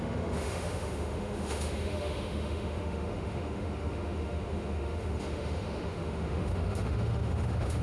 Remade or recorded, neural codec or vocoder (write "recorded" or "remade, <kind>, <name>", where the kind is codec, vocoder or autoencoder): remade, autoencoder, DAC-VAE